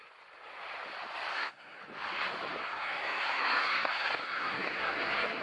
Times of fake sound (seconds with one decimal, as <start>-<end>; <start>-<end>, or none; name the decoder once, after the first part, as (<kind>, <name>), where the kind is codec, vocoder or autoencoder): 1.3-1.8 (codec, SNAC); 2.6-5.4